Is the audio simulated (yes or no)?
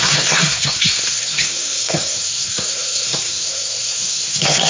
yes